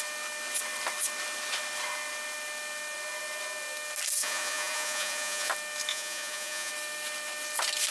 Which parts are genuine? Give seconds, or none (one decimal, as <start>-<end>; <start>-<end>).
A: 0.0-4.2; 5.5-5.9; 6.7-7.9